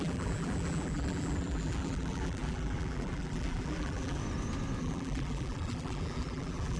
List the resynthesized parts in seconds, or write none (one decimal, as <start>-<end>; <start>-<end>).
0.0-4.2; 4.8-6.8